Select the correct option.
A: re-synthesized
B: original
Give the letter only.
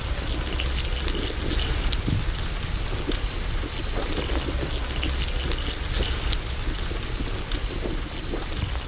B